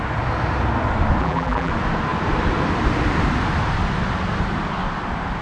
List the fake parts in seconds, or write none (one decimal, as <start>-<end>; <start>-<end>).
1.2-1.7